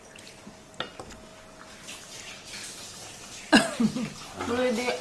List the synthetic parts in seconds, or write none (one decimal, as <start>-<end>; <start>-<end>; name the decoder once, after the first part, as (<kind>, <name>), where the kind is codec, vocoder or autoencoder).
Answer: none